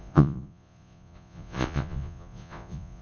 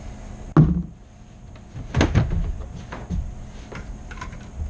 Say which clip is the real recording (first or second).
second